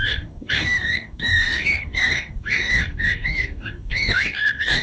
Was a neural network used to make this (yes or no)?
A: yes